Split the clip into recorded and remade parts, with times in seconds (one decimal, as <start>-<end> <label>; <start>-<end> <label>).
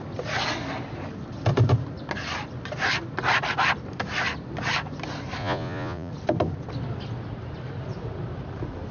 0.0-5.4 recorded; 5.4-6.1 remade; 6.1-8.9 recorded